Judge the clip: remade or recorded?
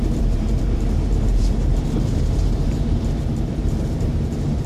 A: remade